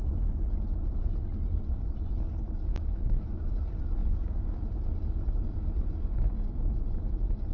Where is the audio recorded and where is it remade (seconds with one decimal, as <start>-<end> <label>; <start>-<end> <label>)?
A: 0.0-2.7 recorded; 2.7-3.4 remade; 3.4-7.5 recorded